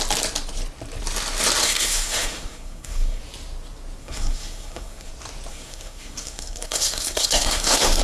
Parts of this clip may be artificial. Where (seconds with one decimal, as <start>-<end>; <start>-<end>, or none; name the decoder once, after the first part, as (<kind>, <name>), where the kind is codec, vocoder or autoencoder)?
1.6-3.2 (codec, SNAC); 4.0-5.1; 5.5-8.0